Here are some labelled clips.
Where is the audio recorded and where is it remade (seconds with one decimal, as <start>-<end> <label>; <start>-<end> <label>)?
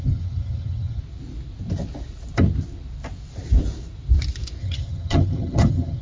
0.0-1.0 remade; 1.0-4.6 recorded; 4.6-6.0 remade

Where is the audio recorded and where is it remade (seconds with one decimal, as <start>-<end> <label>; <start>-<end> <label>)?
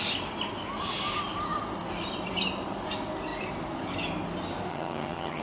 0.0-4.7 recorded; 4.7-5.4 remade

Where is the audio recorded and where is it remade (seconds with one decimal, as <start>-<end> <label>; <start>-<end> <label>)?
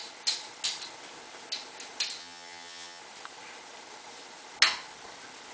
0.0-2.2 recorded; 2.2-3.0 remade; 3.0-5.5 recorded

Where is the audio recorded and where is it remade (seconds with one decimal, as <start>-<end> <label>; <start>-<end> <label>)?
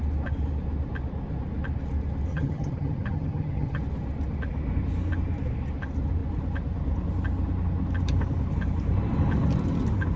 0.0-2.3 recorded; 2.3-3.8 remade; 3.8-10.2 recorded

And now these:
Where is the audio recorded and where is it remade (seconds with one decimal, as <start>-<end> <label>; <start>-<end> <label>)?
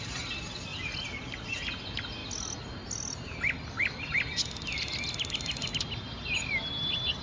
0.0-7.2 recorded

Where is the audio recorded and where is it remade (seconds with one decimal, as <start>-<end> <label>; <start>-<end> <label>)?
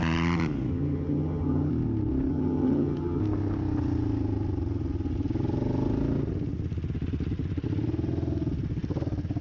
0.0-0.7 recorded; 0.7-1.7 remade; 1.7-2.3 recorded; 2.3-3.2 remade; 3.2-9.4 recorded